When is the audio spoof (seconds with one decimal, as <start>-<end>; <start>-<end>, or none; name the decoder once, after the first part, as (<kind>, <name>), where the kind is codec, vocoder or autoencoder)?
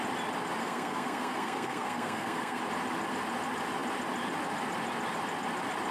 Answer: 0.6-2.6 (codec, SNAC)